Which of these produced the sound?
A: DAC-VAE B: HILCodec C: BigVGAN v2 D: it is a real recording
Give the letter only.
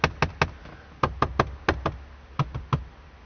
D